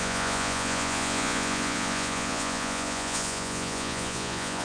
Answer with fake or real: fake